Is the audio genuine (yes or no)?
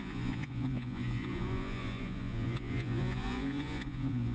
no